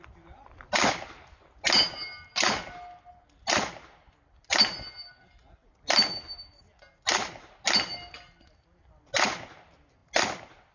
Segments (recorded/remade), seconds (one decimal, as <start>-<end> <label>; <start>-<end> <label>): 0.0-10.7 recorded